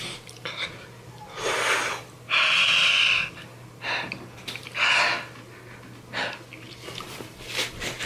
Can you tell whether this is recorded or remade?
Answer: recorded